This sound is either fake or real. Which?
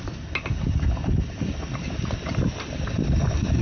real